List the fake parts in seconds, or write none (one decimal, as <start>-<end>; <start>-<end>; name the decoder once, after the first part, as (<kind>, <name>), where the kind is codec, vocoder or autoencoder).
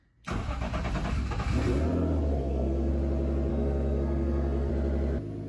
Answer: 2.4-2.9 (codec, SNAC); 3.5-4.7